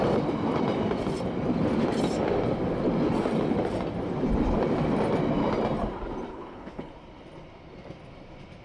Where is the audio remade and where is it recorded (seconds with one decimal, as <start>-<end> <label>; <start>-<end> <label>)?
0.0-6.3 recorded; 6.3-6.9 remade; 6.9-8.6 recorded